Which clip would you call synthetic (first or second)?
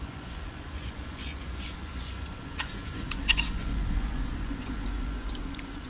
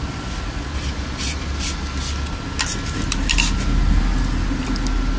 first